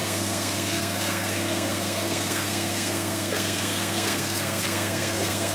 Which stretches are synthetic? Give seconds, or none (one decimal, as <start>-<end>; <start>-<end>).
0.0-5.5